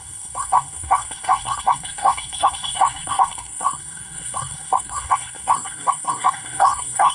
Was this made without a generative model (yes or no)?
no